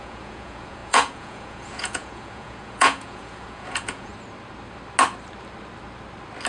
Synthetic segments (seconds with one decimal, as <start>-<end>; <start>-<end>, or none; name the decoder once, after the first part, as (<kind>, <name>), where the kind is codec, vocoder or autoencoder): 0.0-4.1 (vocoder, Vocos)